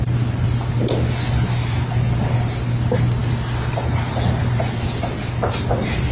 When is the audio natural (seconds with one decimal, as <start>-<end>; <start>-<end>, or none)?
0.0-6.1